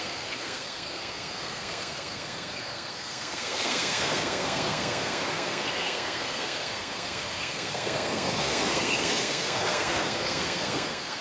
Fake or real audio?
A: fake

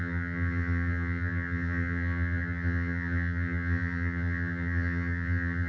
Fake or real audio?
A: fake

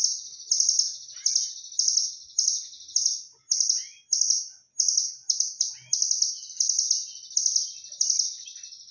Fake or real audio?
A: real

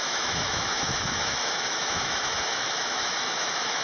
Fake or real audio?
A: fake